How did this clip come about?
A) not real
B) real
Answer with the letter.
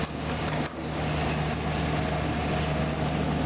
B